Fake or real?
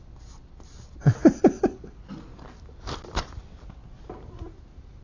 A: real